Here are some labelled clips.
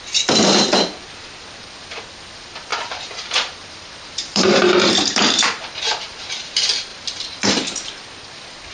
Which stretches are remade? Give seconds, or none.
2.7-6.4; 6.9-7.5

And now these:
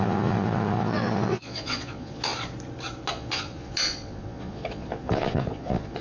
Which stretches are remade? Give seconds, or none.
0.0-2.3; 3.1-6.0

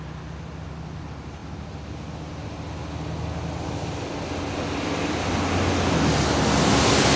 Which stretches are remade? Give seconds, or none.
none

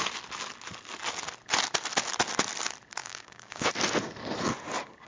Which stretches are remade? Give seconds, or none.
3.0-3.7

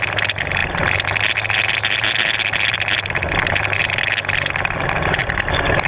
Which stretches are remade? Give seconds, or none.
none